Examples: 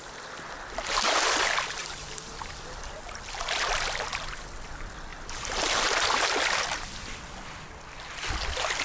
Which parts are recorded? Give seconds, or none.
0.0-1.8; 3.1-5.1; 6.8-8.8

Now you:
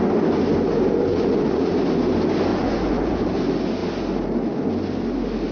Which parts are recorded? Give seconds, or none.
0.0-1.1; 1.7-2.5; 3.4-5.5

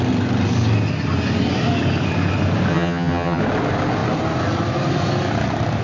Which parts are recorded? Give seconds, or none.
0.0-2.7; 3.4-5.8

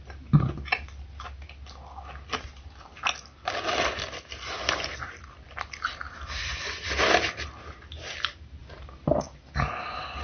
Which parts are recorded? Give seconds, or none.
0.0-10.2

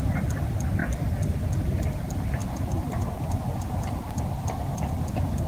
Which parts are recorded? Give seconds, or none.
0.0-0.8; 2.0-2.4; 3.8-5.5